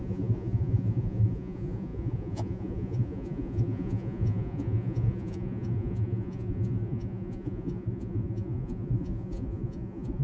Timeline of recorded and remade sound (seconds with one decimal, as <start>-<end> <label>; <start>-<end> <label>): 0.0-10.2 remade